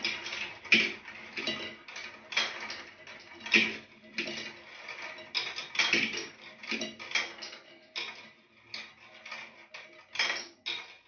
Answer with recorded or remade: recorded